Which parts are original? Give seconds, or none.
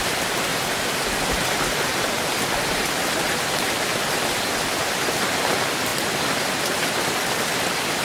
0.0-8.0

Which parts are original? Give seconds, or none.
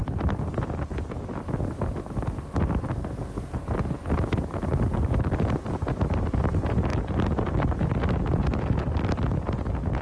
0.5-6.9; 8.0-10.0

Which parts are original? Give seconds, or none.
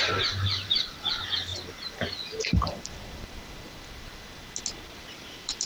1.5-4.9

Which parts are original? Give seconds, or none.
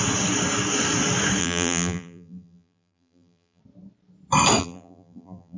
0.0-1.4; 3.6-4.6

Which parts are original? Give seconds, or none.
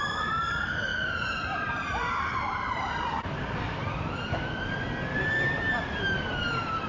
none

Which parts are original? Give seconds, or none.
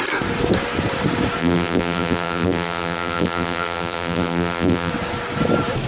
0.0-1.4; 4.9-5.9